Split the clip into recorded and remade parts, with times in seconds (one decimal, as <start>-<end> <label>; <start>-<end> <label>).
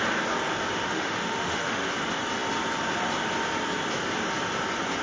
0.0-0.8 recorded; 0.8-1.9 remade; 1.9-5.0 recorded